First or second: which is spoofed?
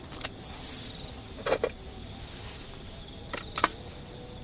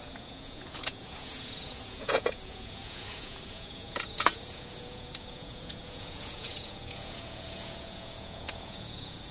second